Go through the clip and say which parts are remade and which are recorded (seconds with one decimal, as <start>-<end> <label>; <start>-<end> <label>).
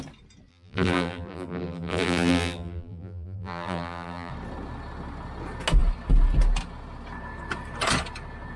0.0-0.5 recorded; 0.5-4.3 remade; 4.3-8.6 recorded